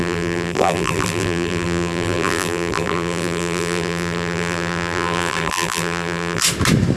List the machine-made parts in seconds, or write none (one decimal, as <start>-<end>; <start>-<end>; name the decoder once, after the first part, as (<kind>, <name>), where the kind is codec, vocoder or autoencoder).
0.0-6.4 (vocoder, BigVGAN v2)

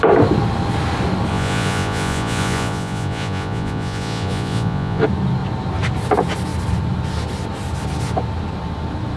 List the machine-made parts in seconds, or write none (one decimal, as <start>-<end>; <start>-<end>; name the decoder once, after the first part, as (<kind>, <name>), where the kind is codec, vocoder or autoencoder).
1.3-5.0 (vocoder, Vocos)

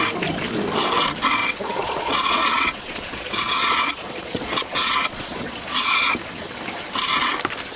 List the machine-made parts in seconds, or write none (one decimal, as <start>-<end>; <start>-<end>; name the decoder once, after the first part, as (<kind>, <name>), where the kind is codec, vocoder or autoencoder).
1.4-6.1 (vocoder, Vocos)

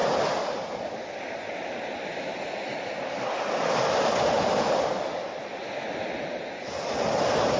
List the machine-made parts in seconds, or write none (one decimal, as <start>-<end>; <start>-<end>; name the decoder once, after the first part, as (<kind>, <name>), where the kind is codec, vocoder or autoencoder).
none

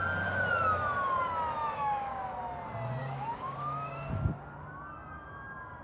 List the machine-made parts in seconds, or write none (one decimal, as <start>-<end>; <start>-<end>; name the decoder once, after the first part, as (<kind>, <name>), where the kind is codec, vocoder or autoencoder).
1.6-2.2 (codec, DAC); 3.0-4.1